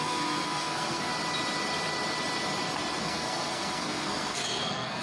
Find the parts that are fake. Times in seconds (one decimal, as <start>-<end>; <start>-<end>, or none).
0.0-1.1; 3.0-5.0